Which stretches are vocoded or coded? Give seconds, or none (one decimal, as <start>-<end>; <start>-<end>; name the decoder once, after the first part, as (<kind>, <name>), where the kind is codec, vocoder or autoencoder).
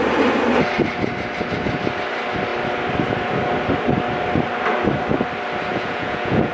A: 5.7-6.5 (vocoder, Vocos)